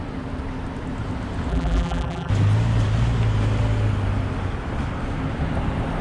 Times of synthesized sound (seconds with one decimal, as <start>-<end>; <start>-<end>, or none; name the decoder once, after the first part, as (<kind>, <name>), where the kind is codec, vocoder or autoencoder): 1.5-2.3 (vocoder, BigVGAN v2)